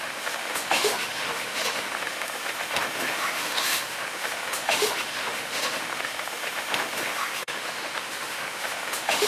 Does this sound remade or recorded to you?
remade